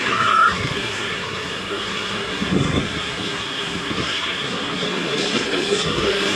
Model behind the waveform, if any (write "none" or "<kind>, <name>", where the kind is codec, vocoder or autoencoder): codec, SNAC